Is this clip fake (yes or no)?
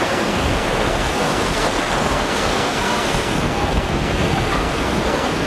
yes